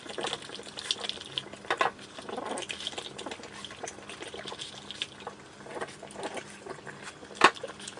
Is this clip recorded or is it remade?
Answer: recorded